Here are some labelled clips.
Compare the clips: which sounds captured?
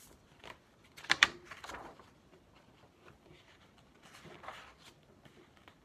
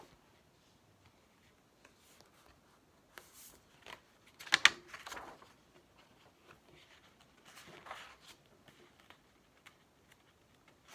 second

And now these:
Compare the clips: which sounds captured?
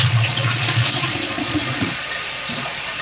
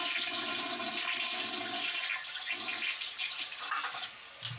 second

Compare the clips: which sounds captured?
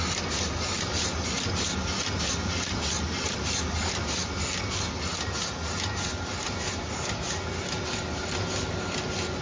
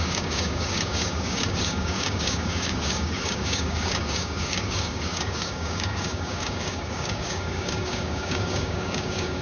first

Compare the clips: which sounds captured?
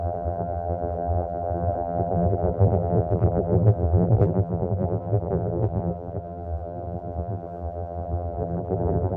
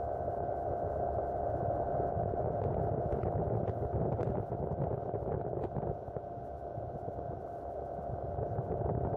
second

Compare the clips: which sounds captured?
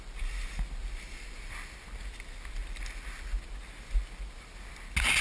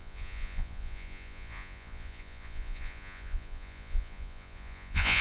first